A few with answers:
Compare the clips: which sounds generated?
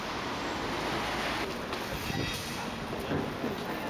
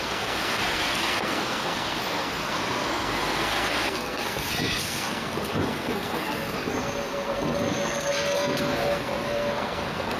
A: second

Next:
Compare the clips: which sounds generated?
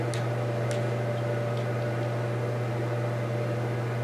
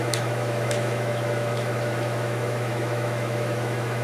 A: second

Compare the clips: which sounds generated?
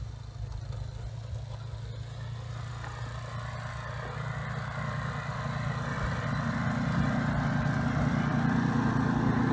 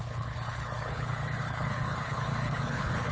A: second